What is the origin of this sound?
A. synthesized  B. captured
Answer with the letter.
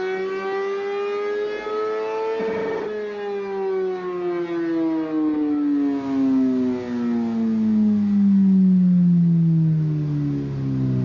B